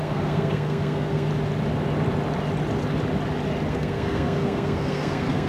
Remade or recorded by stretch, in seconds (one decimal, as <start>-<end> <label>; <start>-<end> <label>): 0.0-1.3 remade; 1.3-3.7 recorded; 3.7-5.5 remade